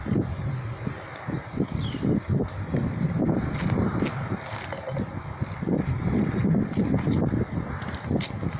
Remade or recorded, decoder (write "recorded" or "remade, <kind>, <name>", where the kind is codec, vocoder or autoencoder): recorded